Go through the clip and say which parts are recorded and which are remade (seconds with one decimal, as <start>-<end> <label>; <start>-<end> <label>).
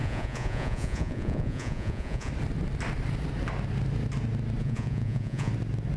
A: 0.0-2.3 remade; 2.3-4.6 recorded; 4.6-5.5 remade; 5.5-6.0 recorded